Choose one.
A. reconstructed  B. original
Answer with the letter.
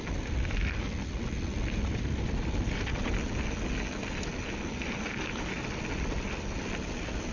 B